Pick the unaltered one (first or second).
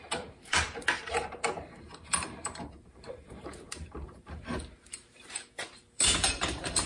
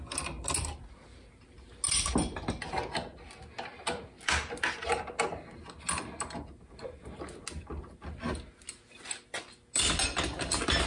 second